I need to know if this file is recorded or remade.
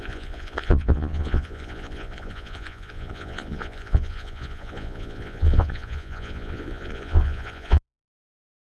remade